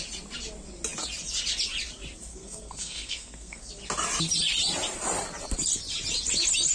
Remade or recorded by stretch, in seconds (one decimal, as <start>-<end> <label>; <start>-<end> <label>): 0.0-2.3 recorded; 2.3-3.7 remade; 3.7-6.7 recorded